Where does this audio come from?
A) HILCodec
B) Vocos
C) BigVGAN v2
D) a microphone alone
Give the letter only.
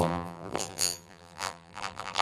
C